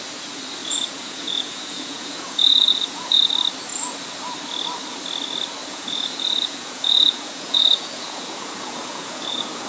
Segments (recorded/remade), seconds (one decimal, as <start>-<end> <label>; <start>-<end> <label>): 0.0-0.6 recorded; 0.6-3.3 remade; 3.3-5.6 recorded; 5.6-9.7 remade